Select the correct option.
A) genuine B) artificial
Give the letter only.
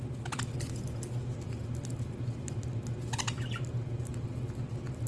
A